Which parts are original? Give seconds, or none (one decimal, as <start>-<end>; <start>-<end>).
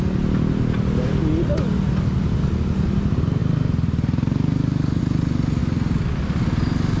0.0-7.0